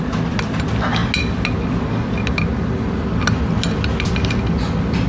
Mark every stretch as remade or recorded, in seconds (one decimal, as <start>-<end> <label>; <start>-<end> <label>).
0.0-5.1 recorded